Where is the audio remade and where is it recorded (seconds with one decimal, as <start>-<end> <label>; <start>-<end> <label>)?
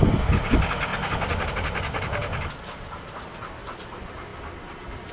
0.0-0.9 recorded; 0.9-1.5 remade; 1.5-4.3 recorded; 4.3-5.1 remade